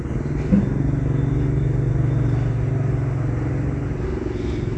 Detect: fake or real real